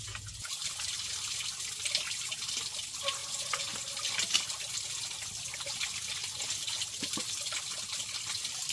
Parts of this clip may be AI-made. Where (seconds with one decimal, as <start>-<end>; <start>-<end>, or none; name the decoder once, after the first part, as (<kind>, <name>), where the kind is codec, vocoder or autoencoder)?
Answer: none